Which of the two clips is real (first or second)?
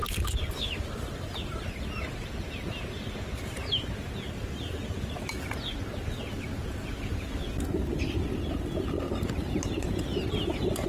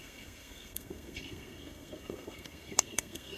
first